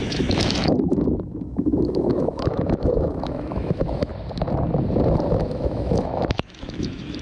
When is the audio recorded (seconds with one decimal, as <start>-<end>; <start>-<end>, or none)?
4.1-5.3